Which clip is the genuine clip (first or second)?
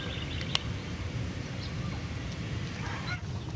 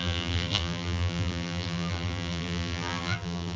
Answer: first